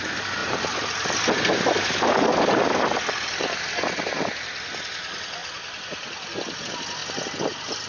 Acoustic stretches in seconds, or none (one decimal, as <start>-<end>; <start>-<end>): 0.0-7.9